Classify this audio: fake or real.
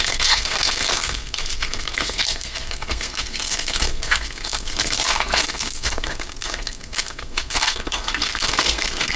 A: fake